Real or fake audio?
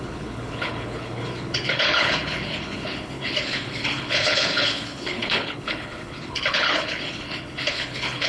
fake